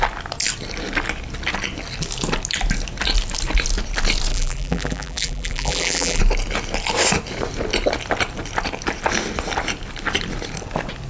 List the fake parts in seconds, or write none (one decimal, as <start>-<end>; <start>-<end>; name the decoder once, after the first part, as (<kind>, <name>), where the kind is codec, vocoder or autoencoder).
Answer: 4.3-6.2 (vocoder, BigVGAN v2)